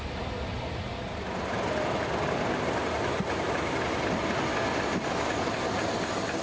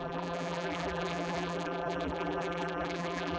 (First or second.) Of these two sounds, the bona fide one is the first